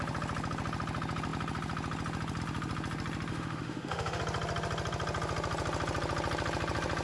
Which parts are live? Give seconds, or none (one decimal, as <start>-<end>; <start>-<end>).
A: 0.0-3.3; 4.2-7.0